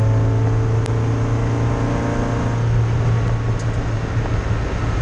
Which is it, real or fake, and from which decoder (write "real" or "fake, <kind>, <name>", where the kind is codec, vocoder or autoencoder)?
real